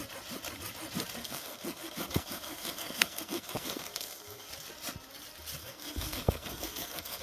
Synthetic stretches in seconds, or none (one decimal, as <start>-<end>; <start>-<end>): 1.2-4.5; 5.6-7.2